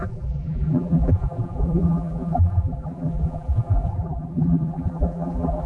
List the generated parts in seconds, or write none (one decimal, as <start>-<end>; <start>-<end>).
0.0-5.7